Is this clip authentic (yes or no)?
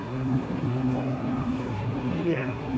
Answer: no